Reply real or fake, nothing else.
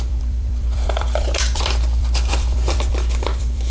fake